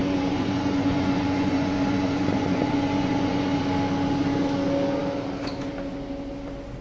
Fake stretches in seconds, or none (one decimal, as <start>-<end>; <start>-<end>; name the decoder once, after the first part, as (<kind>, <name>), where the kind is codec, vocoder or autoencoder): 0.0-3.6 (vocoder, Vocos)